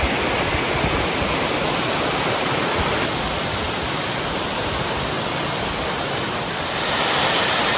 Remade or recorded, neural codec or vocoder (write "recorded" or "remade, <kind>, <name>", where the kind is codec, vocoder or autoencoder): recorded